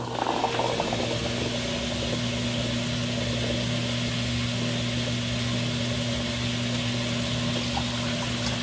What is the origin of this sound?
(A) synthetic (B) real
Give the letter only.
B